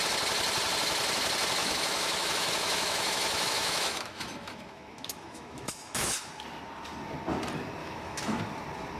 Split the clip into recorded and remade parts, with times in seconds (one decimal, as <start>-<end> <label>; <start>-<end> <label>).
0.0-1.6 recorded; 1.6-6.3 remade; 6.3-7.8 recorded; 7.8-8.4 remade; 8.4-9.0 recorded